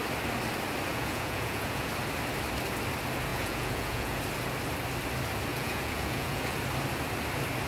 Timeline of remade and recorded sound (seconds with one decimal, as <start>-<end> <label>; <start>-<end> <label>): 0.0-0.9 recorded; 0.9-1.9 remade; 1.9-3.3 recorded; 3.3-4.2 remade; 4.2-5.5 recorded; 5.5-6.6 remade; 6.6-7.7 recorded